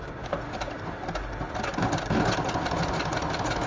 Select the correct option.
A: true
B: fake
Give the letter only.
A